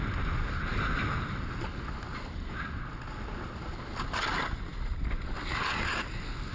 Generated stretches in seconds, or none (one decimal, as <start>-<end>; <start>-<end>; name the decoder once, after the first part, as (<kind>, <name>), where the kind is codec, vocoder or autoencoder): none